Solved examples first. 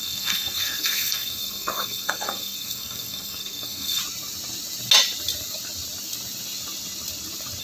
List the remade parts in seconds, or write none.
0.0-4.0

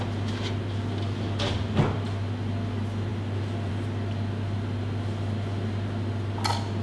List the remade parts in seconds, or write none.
none

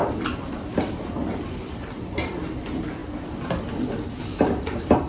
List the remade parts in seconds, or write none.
0.0-3.0; 3.7-5.1